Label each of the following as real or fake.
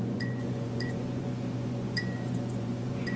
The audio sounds fake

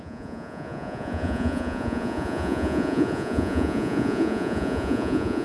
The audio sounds fake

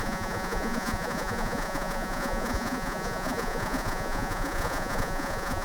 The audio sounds fake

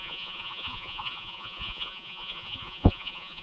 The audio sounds fake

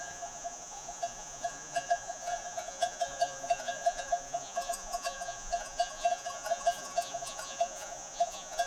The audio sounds fake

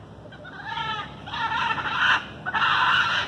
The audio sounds real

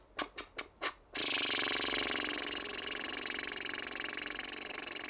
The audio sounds real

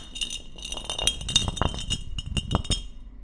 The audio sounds real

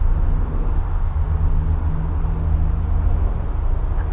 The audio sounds real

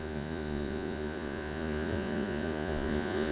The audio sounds fake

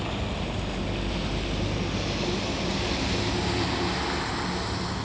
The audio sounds real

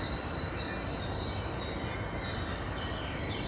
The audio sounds real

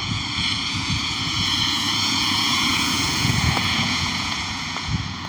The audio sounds fake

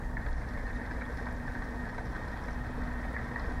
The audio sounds real